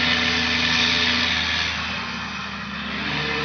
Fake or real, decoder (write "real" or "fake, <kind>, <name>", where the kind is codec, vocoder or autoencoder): real